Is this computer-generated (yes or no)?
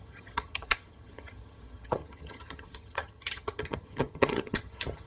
yes